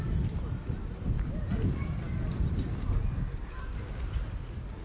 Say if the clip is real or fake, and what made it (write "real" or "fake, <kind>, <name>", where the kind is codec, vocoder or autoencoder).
real